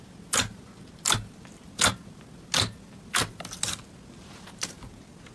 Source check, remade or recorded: recorded